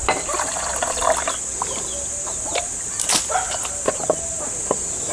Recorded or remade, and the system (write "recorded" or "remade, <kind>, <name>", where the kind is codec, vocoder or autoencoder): recorded